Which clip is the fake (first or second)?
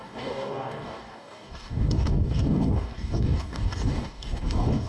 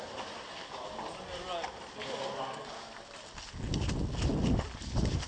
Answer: first